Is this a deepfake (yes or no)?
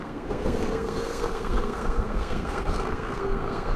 yes